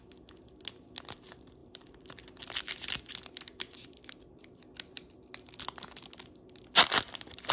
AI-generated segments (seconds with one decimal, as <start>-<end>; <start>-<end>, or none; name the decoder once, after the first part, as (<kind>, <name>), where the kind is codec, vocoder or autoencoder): 1.6-2.4 (vocoder, BigVGAN v2)